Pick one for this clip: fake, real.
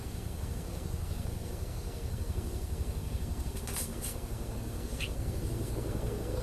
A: fake